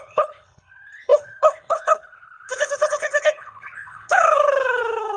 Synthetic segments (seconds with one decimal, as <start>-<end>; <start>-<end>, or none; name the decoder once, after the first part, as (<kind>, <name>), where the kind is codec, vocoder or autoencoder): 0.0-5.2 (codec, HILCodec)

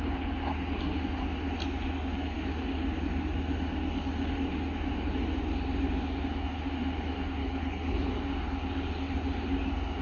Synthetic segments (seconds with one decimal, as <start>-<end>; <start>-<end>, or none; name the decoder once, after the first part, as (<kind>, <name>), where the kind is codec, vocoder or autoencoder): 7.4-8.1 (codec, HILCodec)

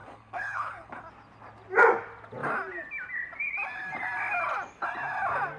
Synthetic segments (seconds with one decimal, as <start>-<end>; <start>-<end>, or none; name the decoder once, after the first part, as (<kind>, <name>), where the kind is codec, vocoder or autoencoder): 0.0-1.0 (codec, HILCodec)